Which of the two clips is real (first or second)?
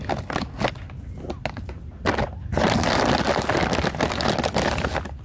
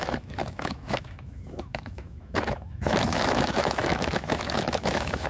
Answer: first